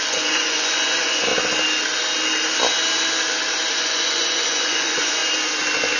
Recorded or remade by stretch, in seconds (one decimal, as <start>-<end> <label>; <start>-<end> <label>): 0.0-1.3 remade; 1.3-3.8 recorded; 3.8-5.2 remade; 5.2-6.0 recorded